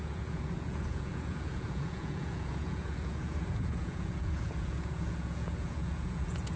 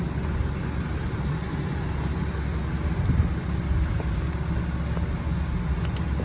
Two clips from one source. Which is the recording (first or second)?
second